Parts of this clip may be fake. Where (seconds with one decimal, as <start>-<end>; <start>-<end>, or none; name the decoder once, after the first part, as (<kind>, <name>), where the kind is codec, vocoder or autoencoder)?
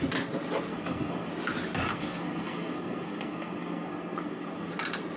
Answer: 0.7-1.3 (codec, SNAC); 1.9-4.7